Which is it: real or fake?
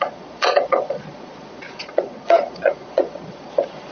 fake